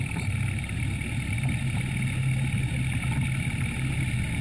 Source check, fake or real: real